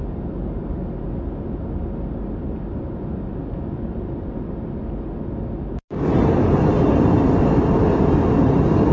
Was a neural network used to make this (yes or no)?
no